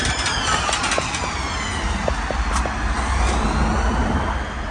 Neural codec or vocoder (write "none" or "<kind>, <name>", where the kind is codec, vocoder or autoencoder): none